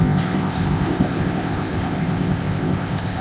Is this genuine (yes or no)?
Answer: no